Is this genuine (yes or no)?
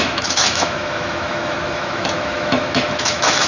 no